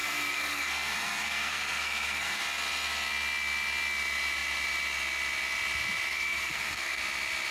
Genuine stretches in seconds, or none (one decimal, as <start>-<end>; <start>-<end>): 2.4-6.1; 7.0-7.5